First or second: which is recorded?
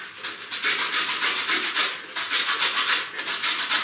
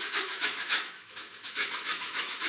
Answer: first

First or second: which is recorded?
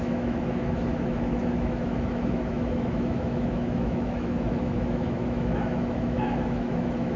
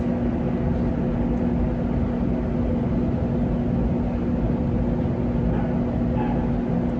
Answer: second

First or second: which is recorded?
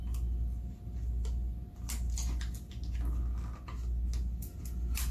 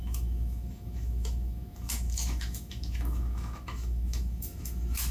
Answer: first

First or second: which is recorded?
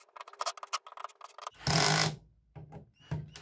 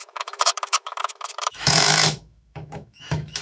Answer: first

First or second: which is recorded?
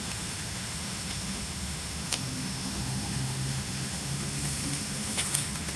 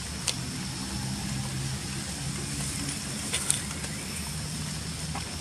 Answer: second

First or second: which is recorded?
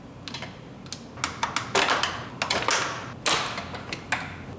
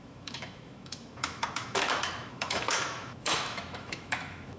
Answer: first